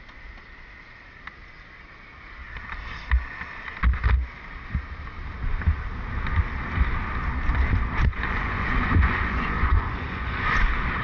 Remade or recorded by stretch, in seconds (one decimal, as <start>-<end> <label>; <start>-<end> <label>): 0.0-8.1 recorded; 8.1-10.6 remade; 10.6-11.0 recorded